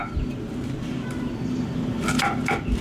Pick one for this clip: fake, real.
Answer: real